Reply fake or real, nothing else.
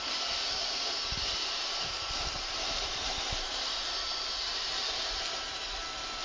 fake